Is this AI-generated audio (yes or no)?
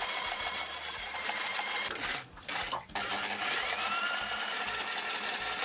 no